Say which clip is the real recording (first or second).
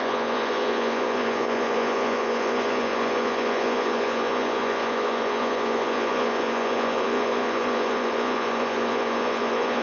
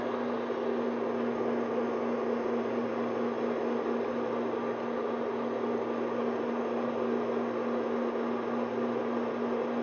second